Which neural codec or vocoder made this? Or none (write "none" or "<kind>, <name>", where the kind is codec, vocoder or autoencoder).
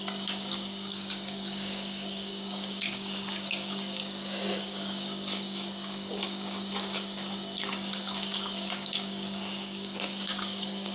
codec, DAC